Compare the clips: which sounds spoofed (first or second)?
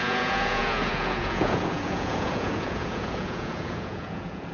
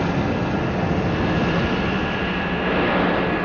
first